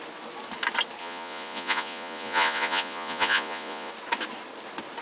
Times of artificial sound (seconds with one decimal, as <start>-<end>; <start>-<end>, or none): 1.0-3.9